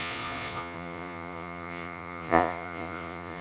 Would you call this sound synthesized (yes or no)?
yes